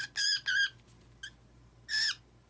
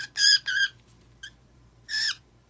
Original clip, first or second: first